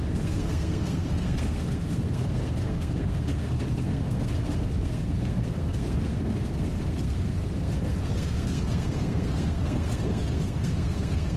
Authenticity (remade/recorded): remade